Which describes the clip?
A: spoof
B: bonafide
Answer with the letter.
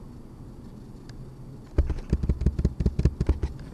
B